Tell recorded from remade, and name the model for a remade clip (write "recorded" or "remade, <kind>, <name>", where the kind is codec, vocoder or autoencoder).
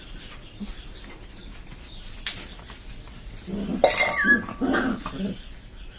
recorded